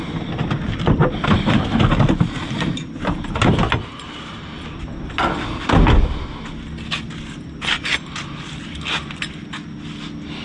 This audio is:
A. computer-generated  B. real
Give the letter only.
B